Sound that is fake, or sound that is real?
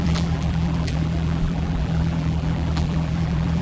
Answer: fake